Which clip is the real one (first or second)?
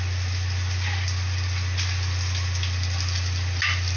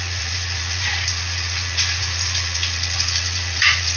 first